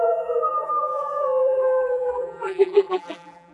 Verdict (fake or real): fake